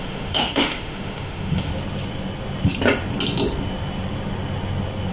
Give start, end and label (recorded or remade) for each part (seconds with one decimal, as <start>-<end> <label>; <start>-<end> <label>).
0.0-1.7 remade; 1.7-5.1 recorded